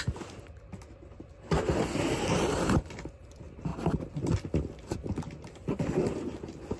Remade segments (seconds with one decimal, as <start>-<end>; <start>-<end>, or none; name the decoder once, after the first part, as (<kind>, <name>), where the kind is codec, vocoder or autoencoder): none

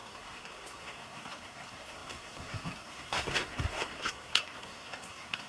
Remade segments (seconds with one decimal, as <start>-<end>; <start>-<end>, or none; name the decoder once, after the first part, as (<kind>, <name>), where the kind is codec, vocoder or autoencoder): 0.0-5.5 (codec, SNAC)

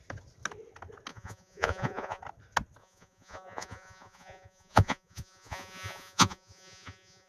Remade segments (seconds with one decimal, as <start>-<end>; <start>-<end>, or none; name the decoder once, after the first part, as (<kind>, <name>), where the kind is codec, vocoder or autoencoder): 1.1-2.2 (vocoder, Vocos); 2.8-7.3

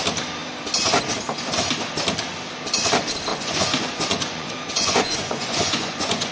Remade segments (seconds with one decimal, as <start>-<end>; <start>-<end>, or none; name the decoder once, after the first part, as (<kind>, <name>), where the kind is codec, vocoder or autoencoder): 3.3-6.3 (vocoder, Vocos)

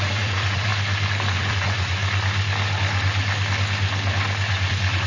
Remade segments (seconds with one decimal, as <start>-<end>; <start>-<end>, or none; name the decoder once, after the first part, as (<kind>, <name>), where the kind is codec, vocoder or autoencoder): 0.0-0.7 (vocoder, Vocos); 1.3-2.0; 4.5-5.1

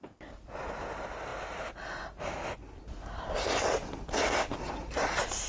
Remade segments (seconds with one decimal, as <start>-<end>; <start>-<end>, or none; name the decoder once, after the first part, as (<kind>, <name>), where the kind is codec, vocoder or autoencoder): none

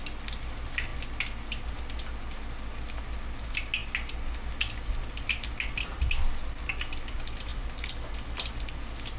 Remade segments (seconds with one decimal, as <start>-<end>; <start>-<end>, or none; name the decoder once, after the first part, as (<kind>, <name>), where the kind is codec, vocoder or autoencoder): none

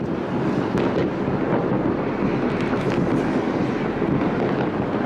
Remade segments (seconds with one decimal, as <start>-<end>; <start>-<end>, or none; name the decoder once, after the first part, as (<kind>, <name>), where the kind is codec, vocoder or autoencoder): none